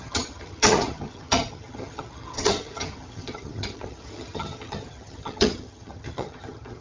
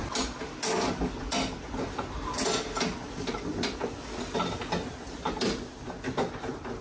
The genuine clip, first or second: second